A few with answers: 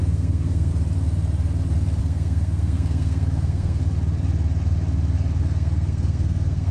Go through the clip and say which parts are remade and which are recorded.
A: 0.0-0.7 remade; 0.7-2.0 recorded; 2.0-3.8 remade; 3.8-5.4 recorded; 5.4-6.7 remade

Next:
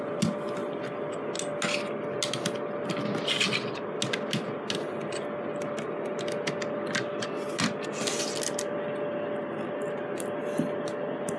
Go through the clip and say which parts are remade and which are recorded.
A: 0.0-11.4 recorded

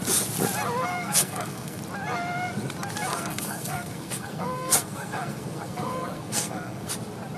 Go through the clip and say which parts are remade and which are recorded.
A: 0.0-0.9 recorded; 0.9-1.8 remade; 1.8-3.1 recorded; 3.1-6.9 remade; 6.9-7.4 recorded

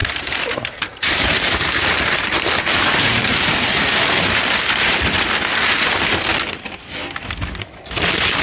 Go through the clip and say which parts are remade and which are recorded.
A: 0.0-3.5 remade; 3.5-8.4 recorded

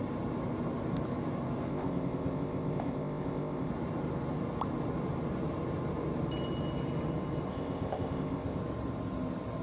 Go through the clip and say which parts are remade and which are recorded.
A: 0.0-1.7 recorded; 1.7-3.7 remade; 3.7-7.5 recorded; 7.5-8.6 remade; 8.6-9.6 recorded

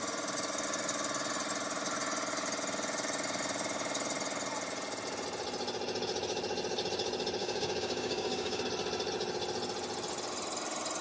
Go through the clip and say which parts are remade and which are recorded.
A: 0.0-7.4 recorded; 7.4-8.6 remade; 8.6-11.0 recorded

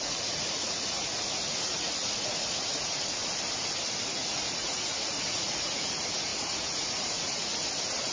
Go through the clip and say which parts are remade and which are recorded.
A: 0.0-3.2 remade; 3.2-4.1 recorded; 4.1-7.5 remade; 7.5-8.1 recorded